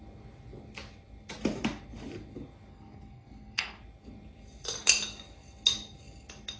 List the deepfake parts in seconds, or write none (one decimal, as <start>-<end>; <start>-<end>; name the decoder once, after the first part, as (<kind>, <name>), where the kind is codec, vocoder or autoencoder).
2.7-3.8 (codec, SNAC)